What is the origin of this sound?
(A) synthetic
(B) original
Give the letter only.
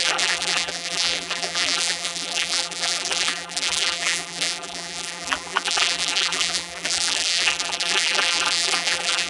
A